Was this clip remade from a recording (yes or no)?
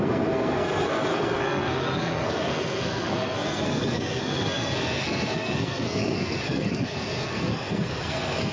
yes